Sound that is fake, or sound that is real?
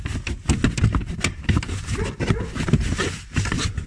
real